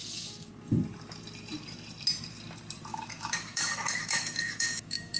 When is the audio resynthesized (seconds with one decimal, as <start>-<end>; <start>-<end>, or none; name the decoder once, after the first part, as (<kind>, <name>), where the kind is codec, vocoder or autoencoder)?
0.0-0.5 (autoencoder, DAC-VAE); 2.9-5.2